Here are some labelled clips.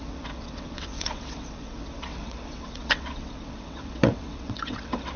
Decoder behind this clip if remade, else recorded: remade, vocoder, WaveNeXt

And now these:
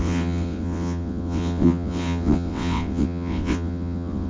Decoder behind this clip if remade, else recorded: remade, vocoder, WaveNeXt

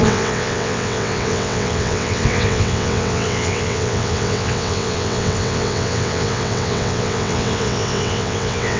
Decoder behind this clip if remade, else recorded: remade, vocoder, WaveNeXt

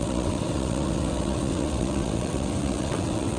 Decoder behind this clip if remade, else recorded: remade, vocoder, WaveNeXt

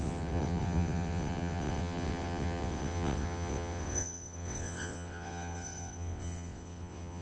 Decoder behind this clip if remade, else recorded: remade, vocoder, WaveNeXt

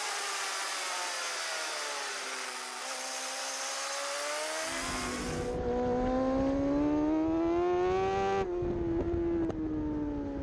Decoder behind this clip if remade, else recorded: recorded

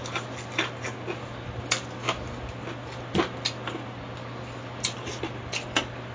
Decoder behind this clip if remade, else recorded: recorded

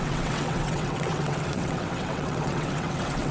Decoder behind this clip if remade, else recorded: remade, vocoder, WaveNeXt